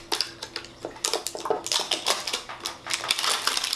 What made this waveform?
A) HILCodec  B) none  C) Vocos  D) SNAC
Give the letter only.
B